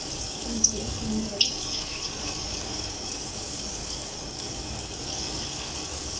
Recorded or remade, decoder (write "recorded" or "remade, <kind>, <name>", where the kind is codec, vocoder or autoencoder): remade, codec, DAC